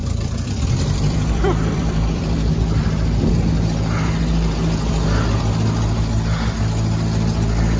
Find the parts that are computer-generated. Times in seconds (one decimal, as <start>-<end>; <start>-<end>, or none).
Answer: 0.0-3.3